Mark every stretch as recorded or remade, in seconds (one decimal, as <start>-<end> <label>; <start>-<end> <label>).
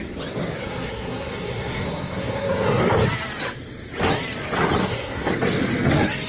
0.0-0.6 recorded; 0.6-2.8 remade; 2.8-4.8 recorded; 4.8-5.3 remade; 5.3-6.3 recorded